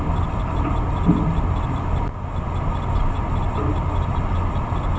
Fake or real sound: real